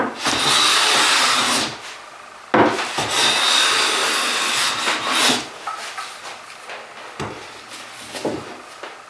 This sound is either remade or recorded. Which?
recorded